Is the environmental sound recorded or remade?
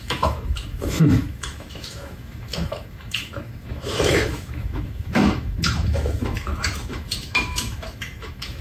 remade